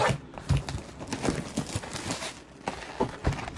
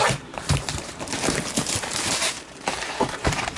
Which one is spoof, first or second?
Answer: second